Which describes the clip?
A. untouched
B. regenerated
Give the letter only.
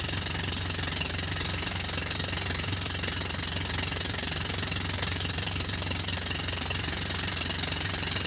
B